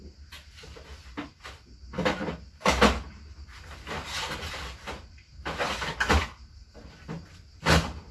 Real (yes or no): yes